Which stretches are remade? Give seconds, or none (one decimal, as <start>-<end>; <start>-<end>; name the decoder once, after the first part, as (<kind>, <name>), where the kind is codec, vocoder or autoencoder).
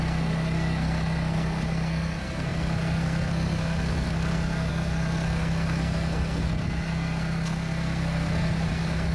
0.0-9.1 (codec, SNAC)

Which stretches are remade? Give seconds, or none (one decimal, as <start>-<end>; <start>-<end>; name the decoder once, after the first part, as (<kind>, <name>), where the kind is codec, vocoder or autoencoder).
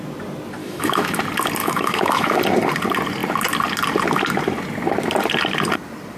0.6-1.2 (autoencoder, DAC-VAE); 1.6-2.4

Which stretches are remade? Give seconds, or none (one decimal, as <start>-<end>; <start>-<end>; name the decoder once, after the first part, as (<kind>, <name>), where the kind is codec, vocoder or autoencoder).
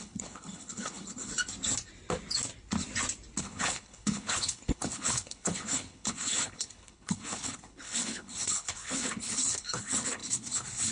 0.0-1.3 (codec, HILCodec); 3.4-10.9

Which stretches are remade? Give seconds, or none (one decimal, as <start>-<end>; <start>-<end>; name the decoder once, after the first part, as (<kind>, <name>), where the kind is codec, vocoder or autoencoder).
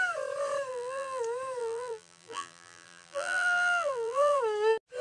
0.7-1.2 (vocoder, BigVGAN v2); 1.6-4.4